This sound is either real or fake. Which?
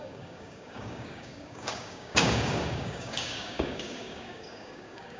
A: fake